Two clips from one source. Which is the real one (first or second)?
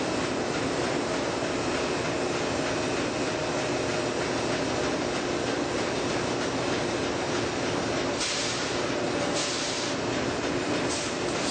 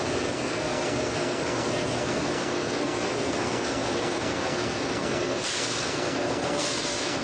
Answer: first